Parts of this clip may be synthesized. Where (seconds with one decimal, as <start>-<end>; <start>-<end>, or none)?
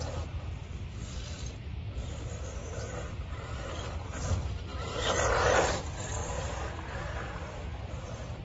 2.7-3.6; 6.2-7.9